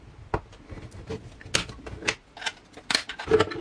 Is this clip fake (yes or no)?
no